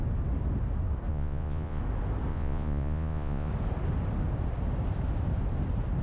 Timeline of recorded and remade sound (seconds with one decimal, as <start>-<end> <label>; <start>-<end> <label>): 0.0-1.1 recorded; 1.1-1.8 remade; 1.8-2.3 recorded; 2.3-3.5 remade; 3.5-6.0 recorded